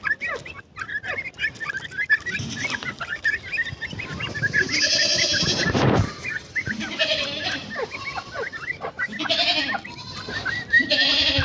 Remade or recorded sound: recorded